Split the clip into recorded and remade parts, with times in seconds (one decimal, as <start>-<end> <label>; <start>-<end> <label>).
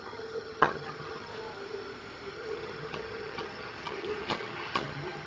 0.0-1.3 remade; 1.3-2.3 recorded; 2.3-5.3 remade